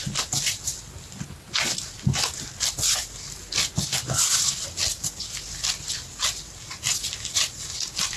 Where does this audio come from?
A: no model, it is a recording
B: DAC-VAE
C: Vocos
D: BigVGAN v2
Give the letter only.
A